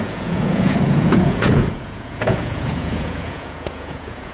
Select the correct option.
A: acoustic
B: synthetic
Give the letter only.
B